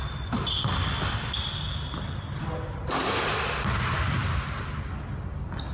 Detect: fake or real real